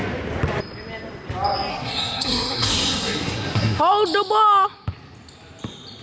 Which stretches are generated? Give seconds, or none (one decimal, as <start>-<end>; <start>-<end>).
1.7-3.8